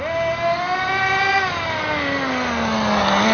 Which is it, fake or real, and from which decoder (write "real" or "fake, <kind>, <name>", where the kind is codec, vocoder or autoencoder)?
real